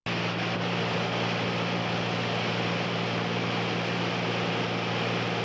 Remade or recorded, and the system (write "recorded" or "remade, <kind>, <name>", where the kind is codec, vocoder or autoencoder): recorded